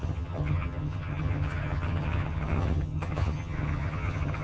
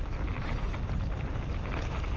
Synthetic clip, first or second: first